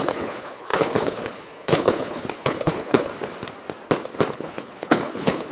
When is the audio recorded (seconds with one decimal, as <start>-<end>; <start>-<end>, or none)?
3.1-4.3